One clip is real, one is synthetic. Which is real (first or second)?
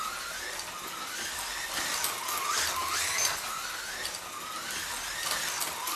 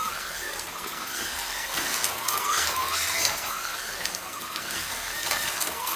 first